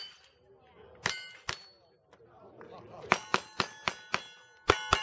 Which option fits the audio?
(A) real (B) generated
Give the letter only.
A